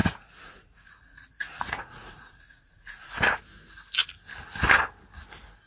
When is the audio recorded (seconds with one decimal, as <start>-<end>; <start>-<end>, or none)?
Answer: 3.1-5.7